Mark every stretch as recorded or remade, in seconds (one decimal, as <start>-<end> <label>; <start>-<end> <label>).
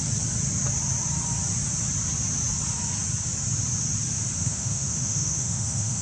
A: 0.0-4.4 recorded; 4.4-6.0 remade